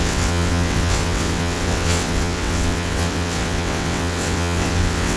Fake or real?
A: fake